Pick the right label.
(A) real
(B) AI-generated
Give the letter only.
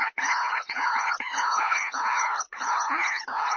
B